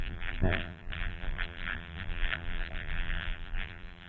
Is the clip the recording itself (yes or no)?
no